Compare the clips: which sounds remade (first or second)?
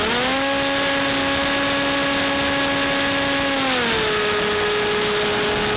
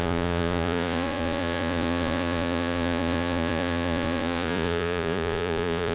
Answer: second